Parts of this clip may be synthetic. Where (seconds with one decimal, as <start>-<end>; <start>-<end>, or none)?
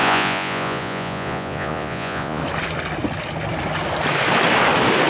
0.0-2.4